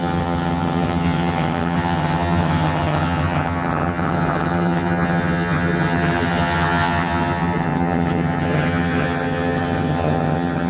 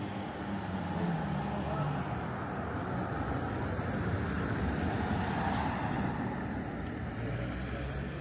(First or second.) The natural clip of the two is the second